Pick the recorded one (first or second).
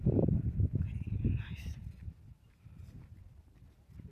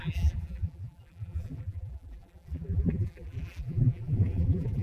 first